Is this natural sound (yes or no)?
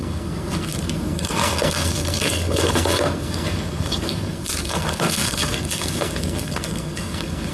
no